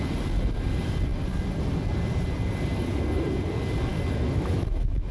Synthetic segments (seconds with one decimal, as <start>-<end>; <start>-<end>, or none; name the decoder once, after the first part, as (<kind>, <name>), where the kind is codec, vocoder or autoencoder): 3.9-5.1 (autoencoder, DAC-VAE)